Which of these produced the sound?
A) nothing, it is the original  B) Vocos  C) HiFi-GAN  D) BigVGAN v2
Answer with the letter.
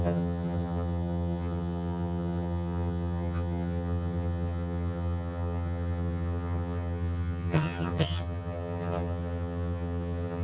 C